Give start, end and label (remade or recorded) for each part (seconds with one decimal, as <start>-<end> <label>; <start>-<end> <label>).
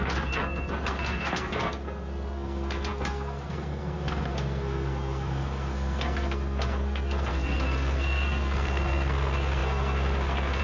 0.0-10.6 remade